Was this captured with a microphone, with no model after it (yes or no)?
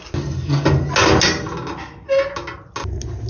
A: yes